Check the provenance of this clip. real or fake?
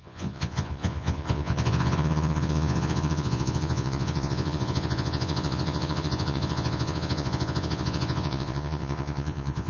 fake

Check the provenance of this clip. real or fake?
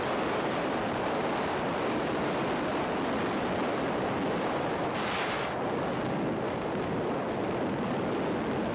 real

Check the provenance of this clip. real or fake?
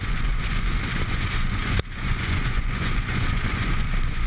fake